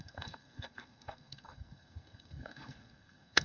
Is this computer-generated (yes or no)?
yes